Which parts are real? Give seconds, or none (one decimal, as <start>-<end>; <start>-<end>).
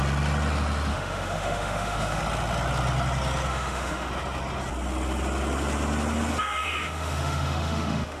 0.0-0.9; 2.2-3.5; 4.1-6.4